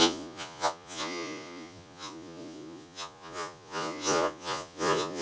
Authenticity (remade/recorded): remade